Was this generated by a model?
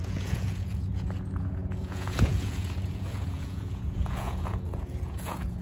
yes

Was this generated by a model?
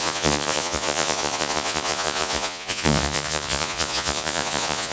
yes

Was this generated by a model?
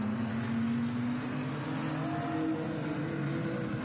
no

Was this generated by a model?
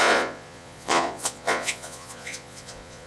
yes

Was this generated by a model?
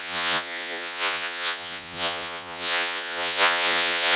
yes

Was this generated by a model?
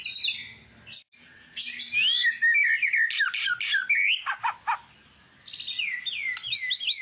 no